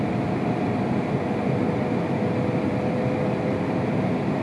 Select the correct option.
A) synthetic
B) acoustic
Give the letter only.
B